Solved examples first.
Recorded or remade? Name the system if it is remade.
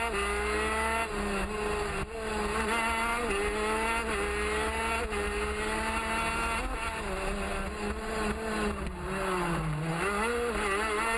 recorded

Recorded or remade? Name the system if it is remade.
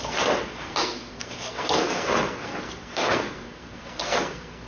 remade, codec, SNAC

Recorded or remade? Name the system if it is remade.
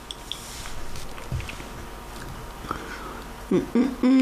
recorded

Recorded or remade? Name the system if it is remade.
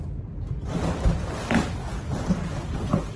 recorded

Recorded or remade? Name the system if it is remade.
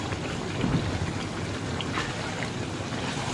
recorded